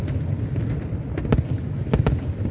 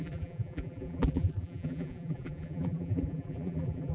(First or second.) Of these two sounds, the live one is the first